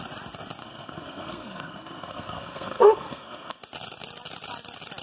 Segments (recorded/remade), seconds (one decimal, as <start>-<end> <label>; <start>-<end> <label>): 0.0-0.6 recorded; 0.6-3.6 remade; 3.6-5.0 recorded